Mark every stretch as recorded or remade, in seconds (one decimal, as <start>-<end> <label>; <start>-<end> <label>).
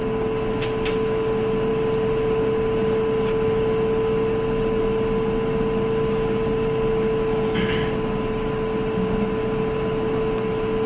0.0-10.9 recorded